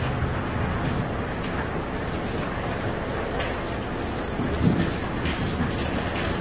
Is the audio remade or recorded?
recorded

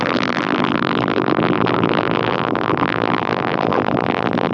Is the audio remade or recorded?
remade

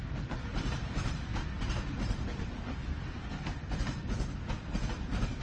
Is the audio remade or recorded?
remade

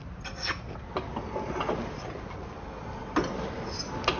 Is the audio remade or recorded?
recorded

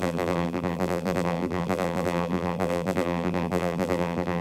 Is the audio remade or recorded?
remade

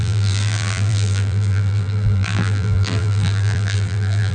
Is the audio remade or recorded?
remade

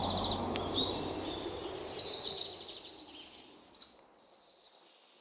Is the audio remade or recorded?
recorded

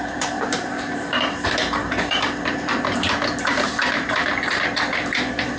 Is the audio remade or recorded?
remade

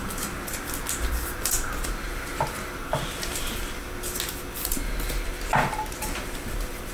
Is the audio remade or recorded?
recorded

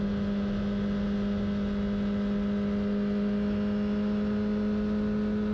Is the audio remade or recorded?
recorded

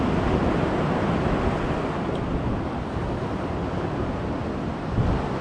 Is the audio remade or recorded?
recorded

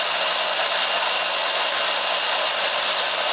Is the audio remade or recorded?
recorded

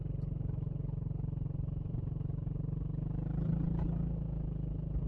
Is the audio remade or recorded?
recorded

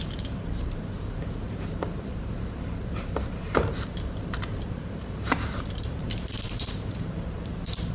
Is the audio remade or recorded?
remade